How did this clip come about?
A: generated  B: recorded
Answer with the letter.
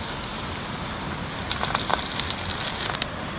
B